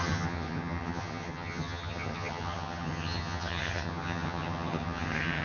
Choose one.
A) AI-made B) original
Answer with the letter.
A